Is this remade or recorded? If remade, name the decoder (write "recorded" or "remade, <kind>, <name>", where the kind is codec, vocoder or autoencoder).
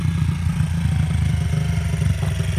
recorded